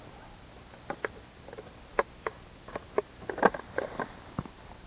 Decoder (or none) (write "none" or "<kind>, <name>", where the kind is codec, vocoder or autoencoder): none